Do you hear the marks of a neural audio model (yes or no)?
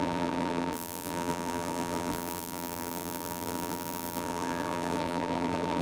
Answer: yes